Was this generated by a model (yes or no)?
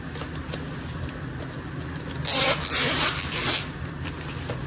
no